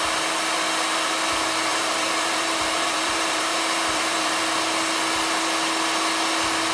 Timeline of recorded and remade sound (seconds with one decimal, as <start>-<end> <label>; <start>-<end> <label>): 0.0-1.7 recorded; 1.7-4.4 remade; 4.4-6.7 recorded